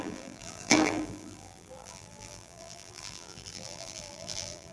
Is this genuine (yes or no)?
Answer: no